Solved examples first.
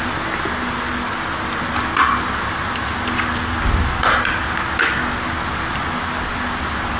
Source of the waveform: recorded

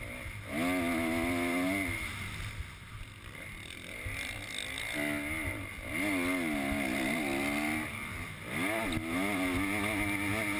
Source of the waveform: recorded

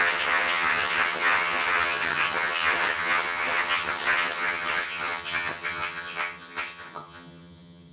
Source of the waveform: remade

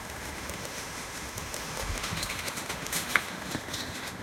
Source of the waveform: remade